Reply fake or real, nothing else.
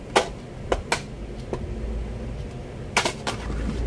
real